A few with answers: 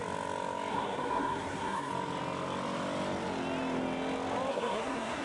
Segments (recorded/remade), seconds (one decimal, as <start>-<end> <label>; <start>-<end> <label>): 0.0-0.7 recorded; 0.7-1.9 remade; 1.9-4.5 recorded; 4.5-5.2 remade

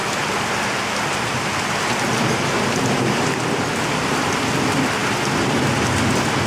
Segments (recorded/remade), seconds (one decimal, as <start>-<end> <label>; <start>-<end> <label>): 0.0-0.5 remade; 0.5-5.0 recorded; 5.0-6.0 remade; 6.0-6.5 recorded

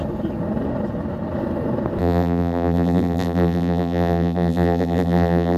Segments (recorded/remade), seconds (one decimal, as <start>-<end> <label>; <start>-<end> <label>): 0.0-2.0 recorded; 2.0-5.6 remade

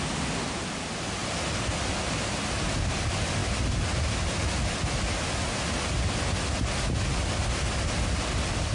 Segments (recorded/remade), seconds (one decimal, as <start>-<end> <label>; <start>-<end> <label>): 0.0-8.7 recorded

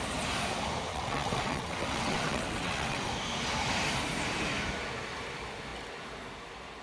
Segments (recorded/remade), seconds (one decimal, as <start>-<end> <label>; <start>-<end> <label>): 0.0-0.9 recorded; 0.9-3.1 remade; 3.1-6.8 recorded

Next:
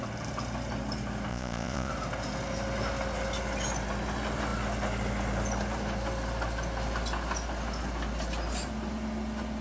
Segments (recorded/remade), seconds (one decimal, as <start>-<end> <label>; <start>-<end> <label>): 0.0-1.3 recorded; 1.3-1.9 remade; 1.9-9.6 recorded

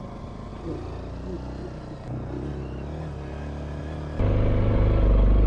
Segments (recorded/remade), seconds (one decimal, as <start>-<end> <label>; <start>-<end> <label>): 0.0-5.5 recorded

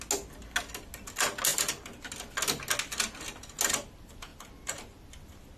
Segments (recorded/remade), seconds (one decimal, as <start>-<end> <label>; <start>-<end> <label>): 0.0-1.5 recorded; 1.5-2.1 remade; 2.1-4.3 recorded; 4.3-5.0 remade; 5.0-5.6 recorded